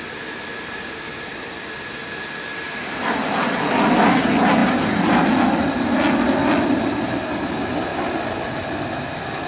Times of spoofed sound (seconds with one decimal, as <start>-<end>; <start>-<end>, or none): 4.6-5.3